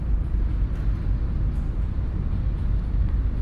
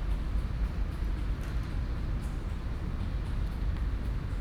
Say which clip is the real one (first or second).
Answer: first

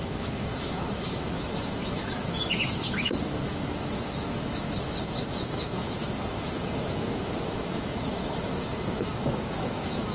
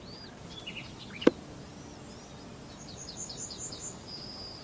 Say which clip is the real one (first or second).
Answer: second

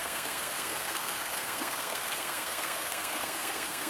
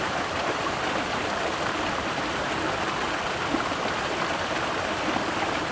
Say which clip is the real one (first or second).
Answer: second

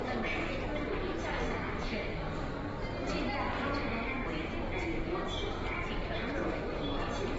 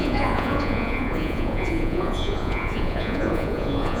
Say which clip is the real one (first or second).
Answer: first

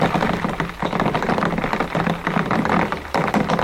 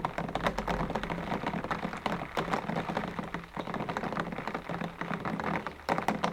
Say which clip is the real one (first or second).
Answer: second